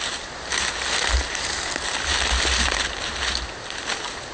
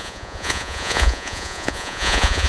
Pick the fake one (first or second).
second